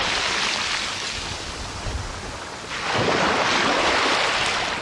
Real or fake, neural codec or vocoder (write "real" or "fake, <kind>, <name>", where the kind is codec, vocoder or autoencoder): real